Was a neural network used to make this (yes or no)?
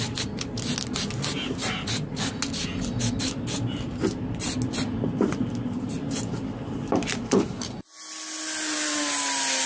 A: no